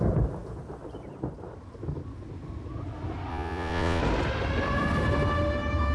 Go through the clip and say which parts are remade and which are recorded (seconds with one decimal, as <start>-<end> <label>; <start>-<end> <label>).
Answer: 0.0-3.3 recorded; 3.3-4.0 remade; 4.0-5.9 recorded